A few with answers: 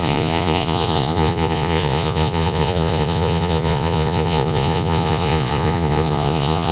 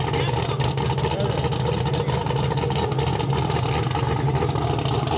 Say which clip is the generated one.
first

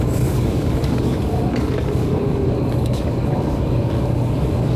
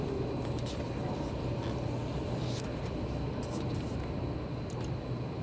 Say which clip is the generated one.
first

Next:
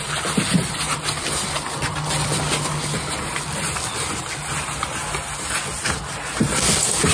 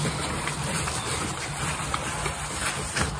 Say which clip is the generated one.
second